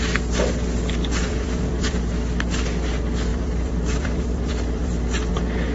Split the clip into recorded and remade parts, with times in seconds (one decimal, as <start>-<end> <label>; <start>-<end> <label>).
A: 0.0-1.0 recorded; 1.0-2.0 remade; 2.0-3.3 recorded; 3.3-5.3 remade; 5.3-5.7 recorded